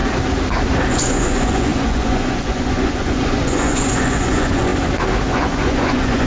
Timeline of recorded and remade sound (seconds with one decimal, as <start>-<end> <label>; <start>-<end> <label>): 0.0-0.9 recorded; 0.9-4.7 remade; 4.7-5.3 recorded; 5.3-6.3 remade